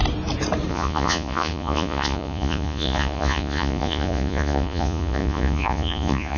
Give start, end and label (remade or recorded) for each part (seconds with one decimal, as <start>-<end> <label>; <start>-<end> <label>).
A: 0.0-0.7 recorded; 0.7-6.4 remade